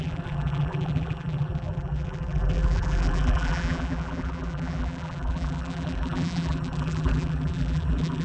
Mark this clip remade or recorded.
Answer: remade